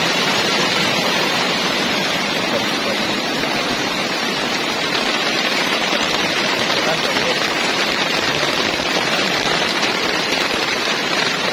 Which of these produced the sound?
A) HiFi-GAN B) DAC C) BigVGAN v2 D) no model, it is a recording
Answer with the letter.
C